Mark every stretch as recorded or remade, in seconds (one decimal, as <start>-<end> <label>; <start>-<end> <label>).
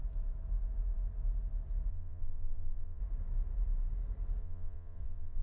0.0-1.9 recorded; 1.9-3.0 remade; 3.0-4.4 recorded; 4.4-5.4 remade